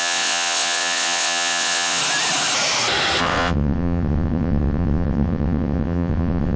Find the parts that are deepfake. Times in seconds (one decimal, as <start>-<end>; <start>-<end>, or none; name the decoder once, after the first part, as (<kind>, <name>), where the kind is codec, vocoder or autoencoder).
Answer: 0.0-2.0 (vocoder, WaveNeXt); 3.2-6.6